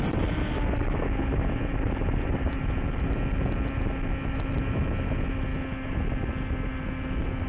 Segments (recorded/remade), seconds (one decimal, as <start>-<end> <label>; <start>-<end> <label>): 0.0-1.3 recorded; 1.3-3.2 remade; 3.2-7.5 recorded